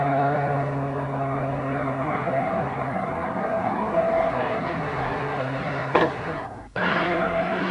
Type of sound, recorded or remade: remade